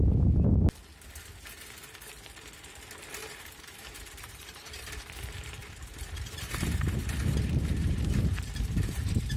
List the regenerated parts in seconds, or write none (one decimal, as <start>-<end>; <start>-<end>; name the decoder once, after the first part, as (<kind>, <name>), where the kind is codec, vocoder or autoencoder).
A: 3.2-5.0 (vocoder, BigVGAN v2); 5.6-9.4